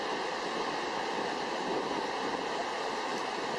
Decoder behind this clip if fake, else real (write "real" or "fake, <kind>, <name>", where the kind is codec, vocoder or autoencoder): real